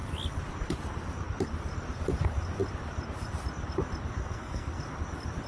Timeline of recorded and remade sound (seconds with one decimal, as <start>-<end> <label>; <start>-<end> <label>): 0.0-4.2 recorded; 4.2-4.8 remade; 4.8-5.5 recorded